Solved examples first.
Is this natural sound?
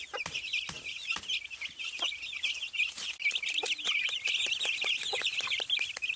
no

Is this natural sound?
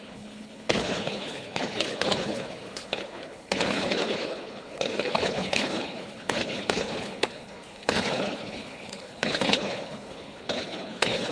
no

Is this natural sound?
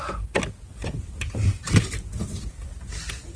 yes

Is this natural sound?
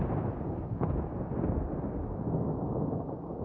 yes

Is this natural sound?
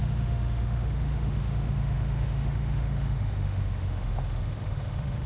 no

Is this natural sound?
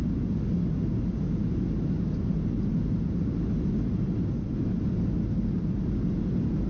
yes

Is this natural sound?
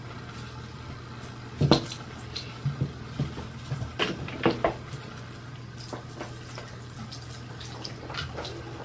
yes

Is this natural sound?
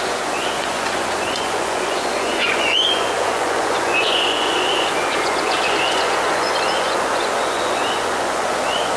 no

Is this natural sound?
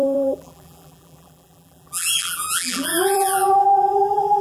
no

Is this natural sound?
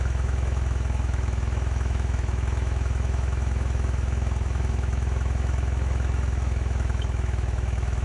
no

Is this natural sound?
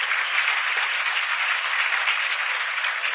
no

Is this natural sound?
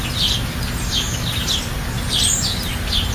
yes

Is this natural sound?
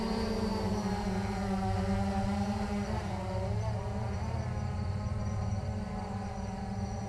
no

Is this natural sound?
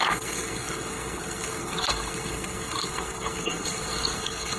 no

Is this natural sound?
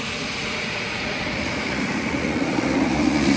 no